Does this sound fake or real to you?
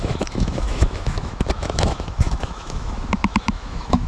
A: fake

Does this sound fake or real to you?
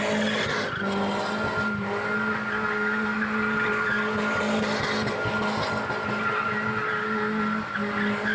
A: real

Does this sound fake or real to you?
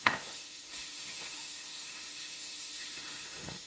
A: fake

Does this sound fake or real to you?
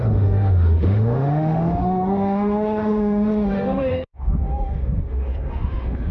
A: fake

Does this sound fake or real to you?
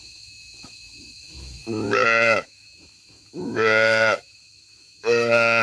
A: fake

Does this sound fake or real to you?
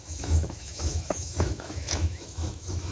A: fake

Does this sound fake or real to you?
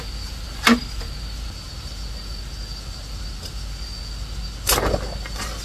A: real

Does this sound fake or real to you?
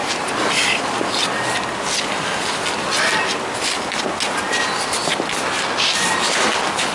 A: real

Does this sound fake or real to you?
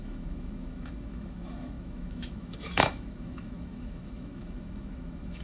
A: fake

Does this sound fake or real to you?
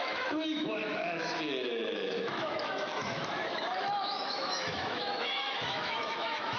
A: fake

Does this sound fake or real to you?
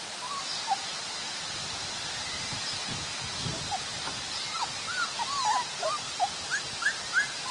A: real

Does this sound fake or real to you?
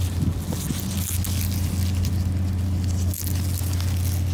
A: real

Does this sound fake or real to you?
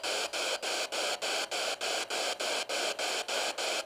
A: real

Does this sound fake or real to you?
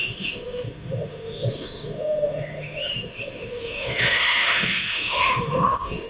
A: fake